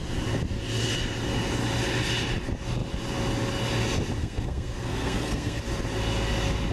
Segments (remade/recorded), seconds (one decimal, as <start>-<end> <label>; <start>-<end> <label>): 0.0-4.2 recorded; 4.2-5.6 remade; 5.6-6.7 recorded